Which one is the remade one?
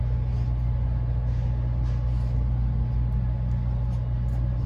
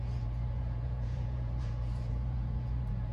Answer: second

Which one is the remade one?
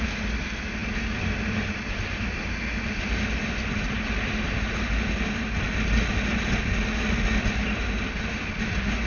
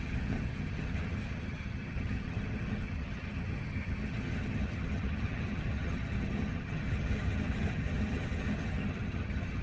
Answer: second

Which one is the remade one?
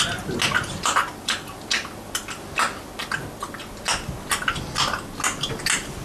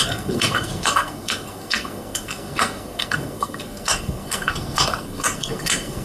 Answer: second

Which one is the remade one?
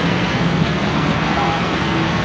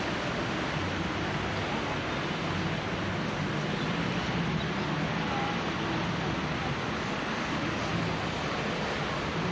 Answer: first